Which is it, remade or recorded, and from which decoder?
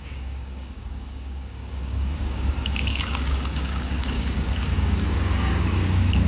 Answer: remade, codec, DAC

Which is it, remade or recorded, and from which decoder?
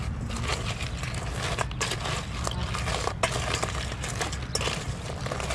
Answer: recorded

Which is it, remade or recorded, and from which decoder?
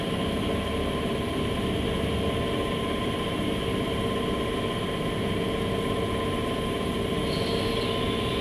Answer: recorded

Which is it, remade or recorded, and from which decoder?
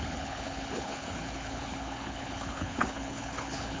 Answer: remade, codec, HILCodec